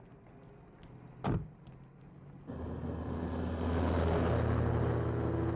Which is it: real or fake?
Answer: real